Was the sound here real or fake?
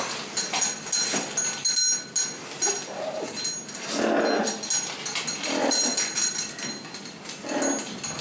real